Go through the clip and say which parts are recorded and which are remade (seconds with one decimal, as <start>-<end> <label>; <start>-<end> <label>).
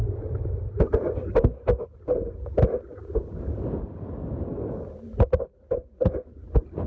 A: 0.0-6.9 recorded